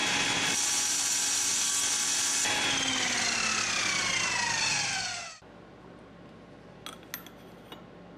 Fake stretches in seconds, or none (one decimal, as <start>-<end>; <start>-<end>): none